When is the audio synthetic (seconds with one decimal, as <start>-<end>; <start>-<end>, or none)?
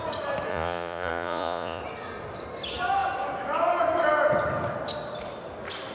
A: 0.5-1.8